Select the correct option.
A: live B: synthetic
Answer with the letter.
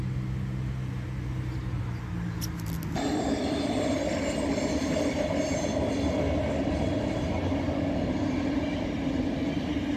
A